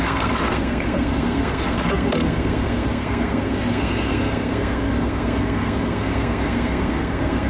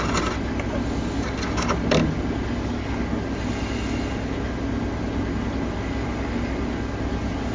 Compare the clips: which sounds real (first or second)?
second